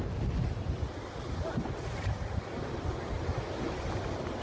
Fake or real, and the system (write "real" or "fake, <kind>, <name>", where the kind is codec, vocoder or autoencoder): real